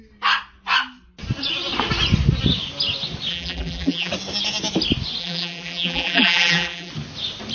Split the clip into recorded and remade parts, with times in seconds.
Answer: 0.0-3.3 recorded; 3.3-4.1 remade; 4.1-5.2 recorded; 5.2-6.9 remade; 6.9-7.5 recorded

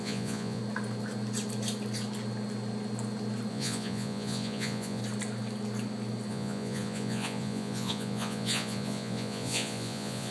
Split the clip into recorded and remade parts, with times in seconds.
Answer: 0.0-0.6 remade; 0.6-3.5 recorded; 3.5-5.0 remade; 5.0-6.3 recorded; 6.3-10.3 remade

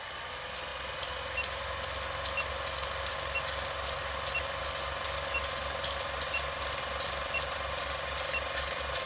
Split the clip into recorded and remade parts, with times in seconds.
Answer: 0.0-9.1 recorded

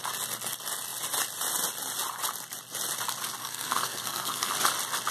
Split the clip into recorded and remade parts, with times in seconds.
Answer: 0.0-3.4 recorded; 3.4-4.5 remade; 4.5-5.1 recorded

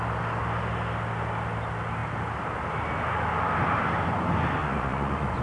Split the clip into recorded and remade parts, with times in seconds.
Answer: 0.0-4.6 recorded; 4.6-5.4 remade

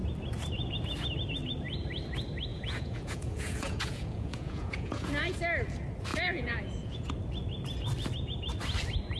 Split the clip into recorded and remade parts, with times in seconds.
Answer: 0.0-2.5 recorded; 2.5-5.4 remade; 5.4-6.1 recorded; 6.1-7.1 remade; 7.1-9.2 recorded

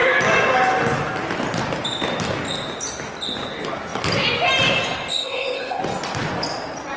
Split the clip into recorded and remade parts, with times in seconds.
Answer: 0.0-5.1 recorded; 5.1-5.8 remade; 5.8-7.0 recorded